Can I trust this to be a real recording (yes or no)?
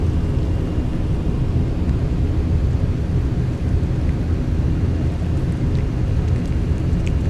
yes